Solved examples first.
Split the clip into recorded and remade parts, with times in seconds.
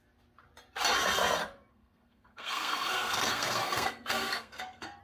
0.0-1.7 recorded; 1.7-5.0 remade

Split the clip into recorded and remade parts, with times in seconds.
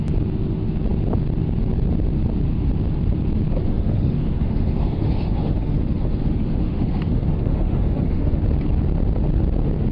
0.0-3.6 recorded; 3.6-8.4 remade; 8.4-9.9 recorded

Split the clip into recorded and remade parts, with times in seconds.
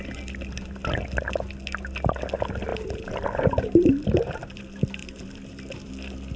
0.0-2.7 recorded; 2.7-4.6 remade; 4.6-5.0 recorded; 5.0-5.9 remade; 5.9-6.4 recorded